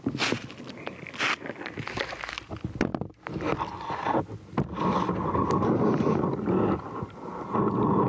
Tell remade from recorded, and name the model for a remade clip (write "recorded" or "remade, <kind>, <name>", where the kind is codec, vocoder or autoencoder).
recorded